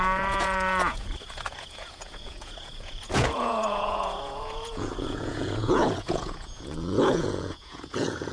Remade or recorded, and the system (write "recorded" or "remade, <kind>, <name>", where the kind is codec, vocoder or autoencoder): remade, vocoder, Vocos